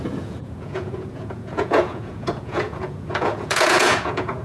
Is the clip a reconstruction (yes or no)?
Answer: yes